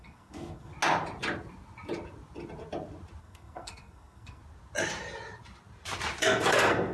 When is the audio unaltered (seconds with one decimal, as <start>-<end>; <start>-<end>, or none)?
0.7-3.2; 4.4-6.2